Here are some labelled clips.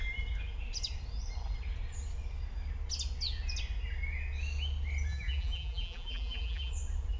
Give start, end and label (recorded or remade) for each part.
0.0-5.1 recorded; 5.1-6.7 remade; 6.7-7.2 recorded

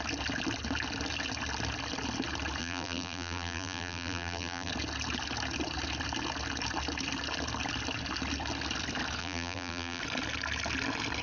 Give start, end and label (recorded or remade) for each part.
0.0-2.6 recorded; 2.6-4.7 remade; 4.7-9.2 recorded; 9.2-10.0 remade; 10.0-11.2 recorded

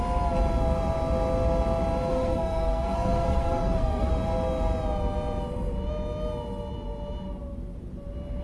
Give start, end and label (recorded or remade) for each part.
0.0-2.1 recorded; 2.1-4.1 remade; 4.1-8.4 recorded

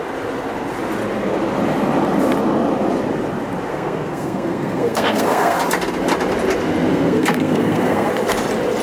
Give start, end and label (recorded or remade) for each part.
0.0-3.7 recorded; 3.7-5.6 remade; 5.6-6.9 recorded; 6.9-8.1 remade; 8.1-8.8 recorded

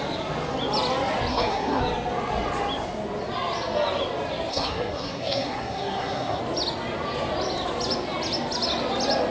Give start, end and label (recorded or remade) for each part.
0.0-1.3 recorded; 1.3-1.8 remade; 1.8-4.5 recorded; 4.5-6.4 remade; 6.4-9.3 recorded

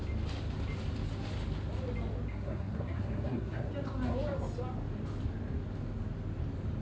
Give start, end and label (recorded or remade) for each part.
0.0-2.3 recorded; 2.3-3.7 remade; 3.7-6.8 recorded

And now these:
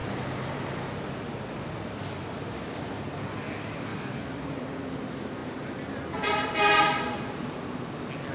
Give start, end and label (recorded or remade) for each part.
0.0-0.7 remade; 0.7-3.9 recorded; 3.9-4.7 remade; 4.7-8.3 recorded

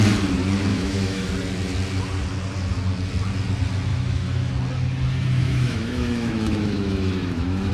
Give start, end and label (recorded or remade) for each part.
0.0-0.7 recorded; 0.7-1.3 remade; 1.3-3.9 recorded; 3.9-4.5 remade; 4.5-5.4 recorded; 5.4-7.7 remade